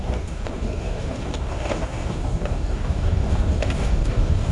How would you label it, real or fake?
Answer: fake